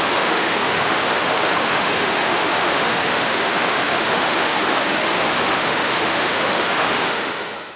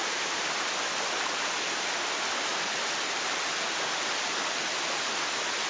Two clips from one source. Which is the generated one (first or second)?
first